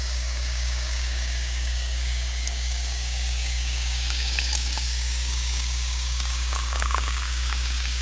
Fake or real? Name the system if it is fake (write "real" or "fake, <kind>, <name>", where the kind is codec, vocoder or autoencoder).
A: fake, codec, DAC